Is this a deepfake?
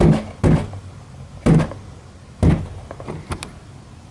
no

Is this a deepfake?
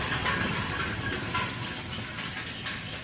no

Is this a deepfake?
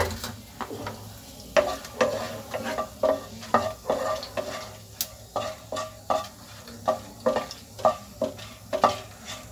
no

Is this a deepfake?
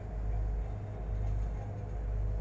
no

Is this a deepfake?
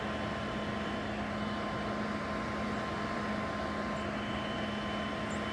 no